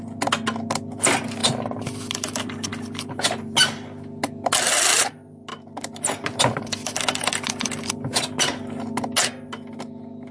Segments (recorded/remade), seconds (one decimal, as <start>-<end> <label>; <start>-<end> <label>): 0.0-10.3 recorded